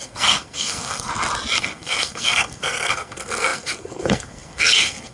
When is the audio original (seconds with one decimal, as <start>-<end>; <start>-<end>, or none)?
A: 1.1-1.6